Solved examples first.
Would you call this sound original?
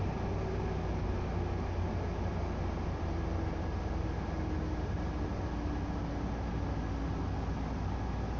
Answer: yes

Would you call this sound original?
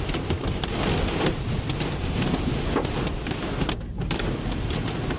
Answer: yes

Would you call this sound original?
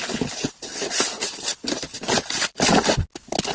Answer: yes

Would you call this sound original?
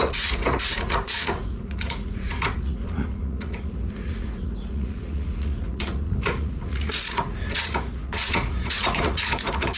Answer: no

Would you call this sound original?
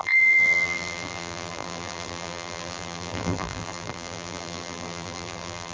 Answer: no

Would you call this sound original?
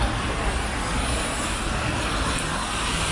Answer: yes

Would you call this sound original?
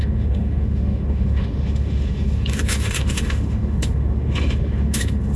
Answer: no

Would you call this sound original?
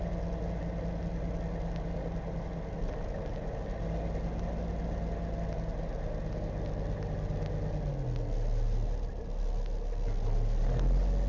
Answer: yes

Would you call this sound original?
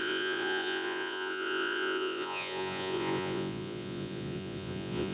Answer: no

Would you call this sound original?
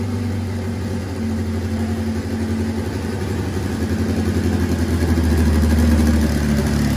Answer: yes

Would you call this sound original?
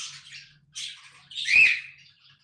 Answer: yes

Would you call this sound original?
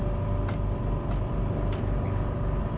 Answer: yes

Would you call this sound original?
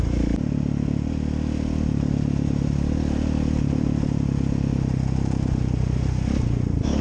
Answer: yes